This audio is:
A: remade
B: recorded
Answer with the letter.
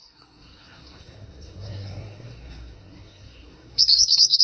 A